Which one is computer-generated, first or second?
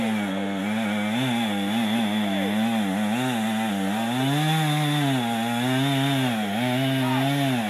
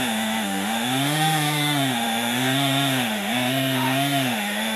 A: second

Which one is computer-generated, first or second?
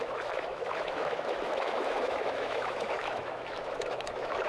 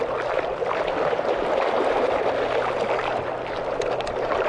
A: first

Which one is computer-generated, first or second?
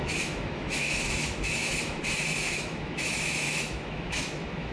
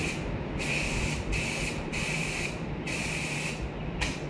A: first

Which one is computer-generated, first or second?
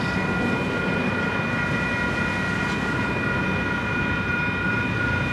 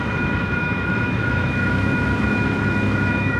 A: second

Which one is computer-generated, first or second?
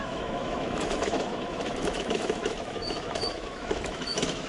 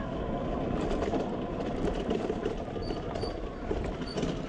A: first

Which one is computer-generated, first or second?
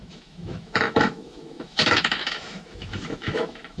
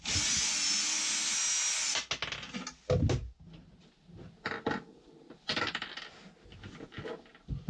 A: first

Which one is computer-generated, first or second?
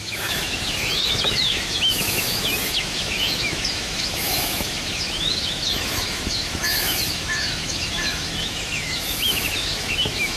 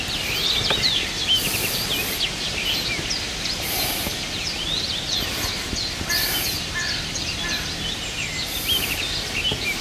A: first